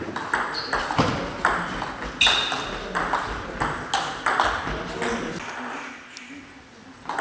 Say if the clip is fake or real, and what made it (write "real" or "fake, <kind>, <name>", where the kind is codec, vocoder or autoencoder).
real